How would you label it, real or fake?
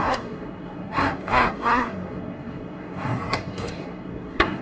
fake